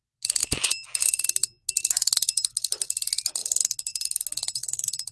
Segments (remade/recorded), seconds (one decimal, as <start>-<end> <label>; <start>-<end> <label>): 0.0-5.1 recorded

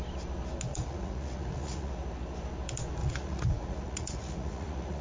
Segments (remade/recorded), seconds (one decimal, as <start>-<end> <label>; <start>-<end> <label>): 0.0-0.7 recorded; 0.7-1.9 remade; 1.9-3.0 recorded; 3.0-5.0 remade

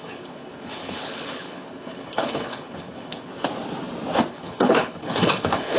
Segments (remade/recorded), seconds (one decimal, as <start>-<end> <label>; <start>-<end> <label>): 0.0-3.3 remade; 3.3-4.3 recorded; 4.3-5.8 remade